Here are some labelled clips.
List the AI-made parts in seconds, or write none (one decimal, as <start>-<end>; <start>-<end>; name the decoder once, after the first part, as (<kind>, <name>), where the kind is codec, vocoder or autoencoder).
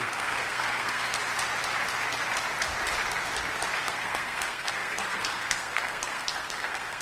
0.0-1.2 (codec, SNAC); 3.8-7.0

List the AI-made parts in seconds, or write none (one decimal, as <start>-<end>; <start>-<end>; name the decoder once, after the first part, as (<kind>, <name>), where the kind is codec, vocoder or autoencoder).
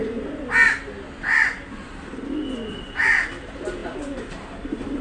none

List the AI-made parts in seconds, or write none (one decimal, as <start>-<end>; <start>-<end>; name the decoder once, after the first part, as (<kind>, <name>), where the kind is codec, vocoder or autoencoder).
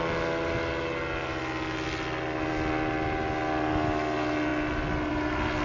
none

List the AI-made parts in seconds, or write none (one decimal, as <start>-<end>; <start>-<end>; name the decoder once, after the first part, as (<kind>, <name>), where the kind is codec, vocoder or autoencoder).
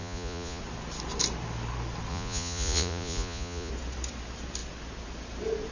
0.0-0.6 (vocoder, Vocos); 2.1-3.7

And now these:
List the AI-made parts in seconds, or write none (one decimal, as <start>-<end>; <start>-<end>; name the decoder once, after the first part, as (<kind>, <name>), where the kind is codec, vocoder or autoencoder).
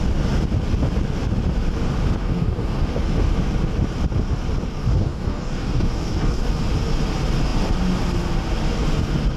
2.2-3.0 (codec, DAC); 4.8-6.5